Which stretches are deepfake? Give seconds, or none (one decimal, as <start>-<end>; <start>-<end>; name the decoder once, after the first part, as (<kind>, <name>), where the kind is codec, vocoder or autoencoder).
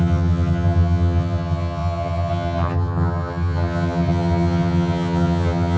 0.0-5.8 (vocoder, HiFi-GAN)